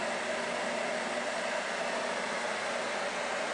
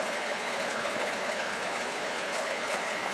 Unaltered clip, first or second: first